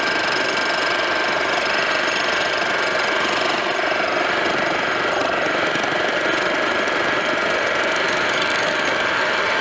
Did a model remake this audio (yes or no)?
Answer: no